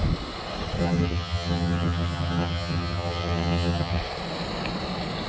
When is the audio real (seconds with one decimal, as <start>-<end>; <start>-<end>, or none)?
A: 0.0-0.8; 4.0-5.3